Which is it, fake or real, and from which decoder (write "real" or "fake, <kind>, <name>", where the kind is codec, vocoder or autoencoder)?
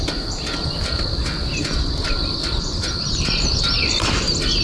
real